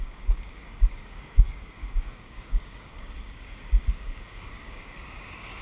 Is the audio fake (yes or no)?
yes